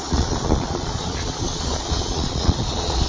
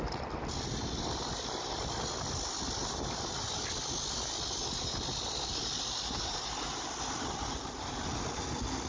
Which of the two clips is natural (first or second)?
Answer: second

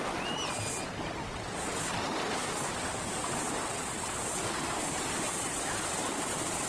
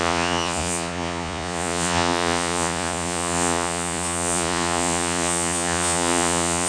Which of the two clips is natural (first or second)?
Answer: first